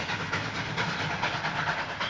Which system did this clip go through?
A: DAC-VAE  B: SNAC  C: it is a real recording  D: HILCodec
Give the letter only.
C